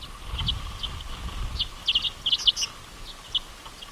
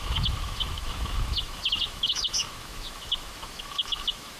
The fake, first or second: second